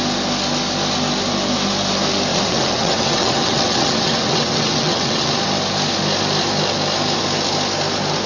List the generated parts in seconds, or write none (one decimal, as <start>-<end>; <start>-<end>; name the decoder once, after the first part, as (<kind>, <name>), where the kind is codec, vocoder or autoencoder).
2.3-5.3 (vocoder, WaveNeXt)